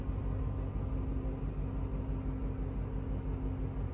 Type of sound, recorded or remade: recorded